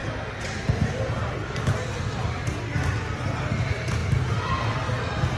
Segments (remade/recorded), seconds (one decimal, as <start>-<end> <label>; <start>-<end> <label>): 0.0-0.6 remade; 0.6-1.2 recorded; 1.2-2.3 remade; 2.3-5.4 recorded